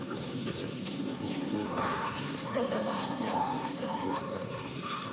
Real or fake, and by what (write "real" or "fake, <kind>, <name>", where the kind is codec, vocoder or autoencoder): fake, codec, SNAC